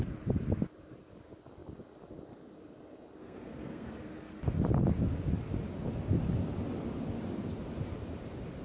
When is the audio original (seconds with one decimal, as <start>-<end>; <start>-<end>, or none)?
0.0-3.2; 4.3-8.6